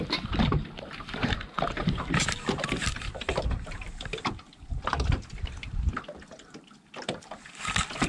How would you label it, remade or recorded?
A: remade